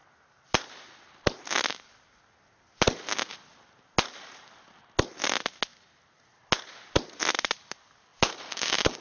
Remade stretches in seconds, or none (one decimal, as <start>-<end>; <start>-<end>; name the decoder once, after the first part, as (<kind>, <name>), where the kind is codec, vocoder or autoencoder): none

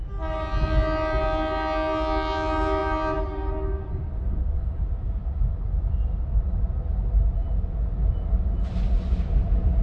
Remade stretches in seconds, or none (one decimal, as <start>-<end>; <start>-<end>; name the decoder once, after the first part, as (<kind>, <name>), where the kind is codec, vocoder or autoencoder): none

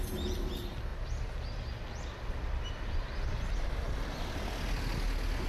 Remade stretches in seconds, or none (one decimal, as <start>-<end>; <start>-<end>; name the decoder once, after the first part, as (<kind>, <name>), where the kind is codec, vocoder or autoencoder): none

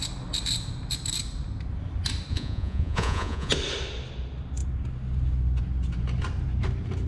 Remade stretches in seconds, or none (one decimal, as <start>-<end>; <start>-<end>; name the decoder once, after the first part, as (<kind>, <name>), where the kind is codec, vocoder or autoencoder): 2.3-3.5 (vocoder, Vocos)

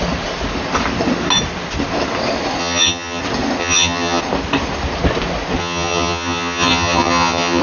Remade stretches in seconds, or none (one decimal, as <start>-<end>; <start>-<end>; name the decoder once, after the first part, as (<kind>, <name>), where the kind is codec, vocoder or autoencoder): 2.6-3.2 (vocoder, HiFi-GAN); 3.6-4.2; 5.6-7.6

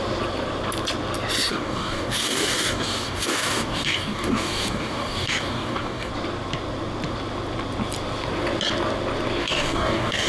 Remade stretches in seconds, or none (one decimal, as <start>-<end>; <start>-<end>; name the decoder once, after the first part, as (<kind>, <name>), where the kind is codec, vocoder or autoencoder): 1.5-6.1 (codec, DAC); 9.4-10.3